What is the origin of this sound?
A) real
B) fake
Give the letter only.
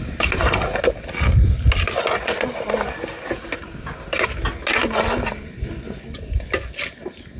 A